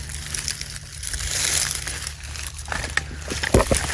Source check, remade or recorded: recorded